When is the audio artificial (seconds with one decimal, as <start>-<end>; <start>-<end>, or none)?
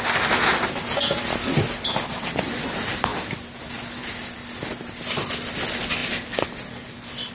none